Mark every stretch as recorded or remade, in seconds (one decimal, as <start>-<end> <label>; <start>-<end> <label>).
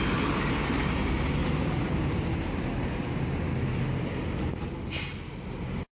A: 0.0-1.4 recorded; 1.4-1.9 remade; 1.9-6.0 recorded